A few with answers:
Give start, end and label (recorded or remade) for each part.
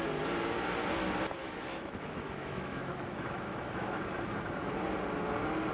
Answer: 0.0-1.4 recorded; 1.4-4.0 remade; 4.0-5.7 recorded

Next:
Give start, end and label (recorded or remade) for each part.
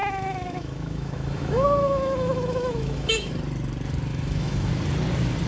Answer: 0.0-3.3 remade; 3.3-4.1 recorded; 4.1-4.7 remade; 4.7-5.5 recorded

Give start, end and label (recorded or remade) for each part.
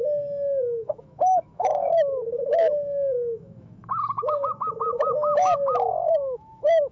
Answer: 0.0-6.9 remade